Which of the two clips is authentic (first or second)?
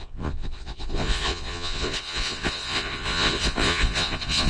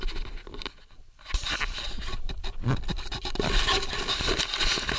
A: second